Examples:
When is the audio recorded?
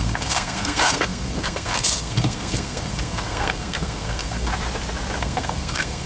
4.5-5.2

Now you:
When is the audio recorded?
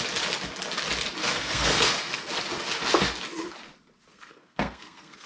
0.0-1.2; 2.3-4.1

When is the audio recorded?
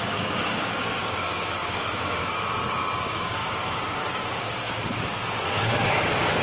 none